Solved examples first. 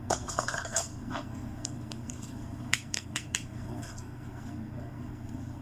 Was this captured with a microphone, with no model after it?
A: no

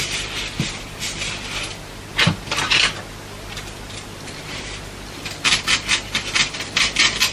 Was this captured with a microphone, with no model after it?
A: yes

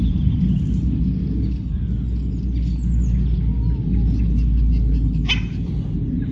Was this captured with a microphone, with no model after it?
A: yes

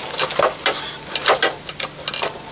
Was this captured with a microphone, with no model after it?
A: yes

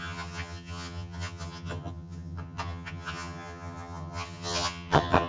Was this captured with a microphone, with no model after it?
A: no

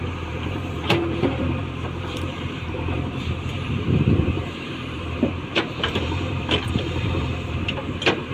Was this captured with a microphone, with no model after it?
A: no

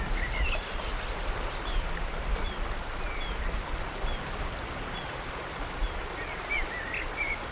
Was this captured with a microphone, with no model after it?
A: no